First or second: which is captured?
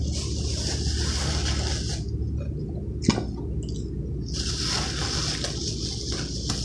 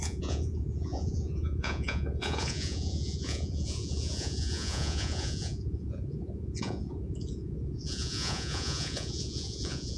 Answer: first